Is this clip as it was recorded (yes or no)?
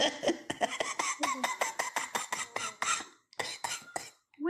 yes